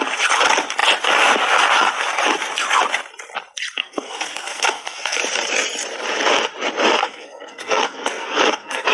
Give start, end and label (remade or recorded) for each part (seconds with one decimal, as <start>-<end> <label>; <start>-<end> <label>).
0.0-3.8 recorded; 3.8-5.2 remade; 5.2-7.0 recorded; 7.0-8.9 remade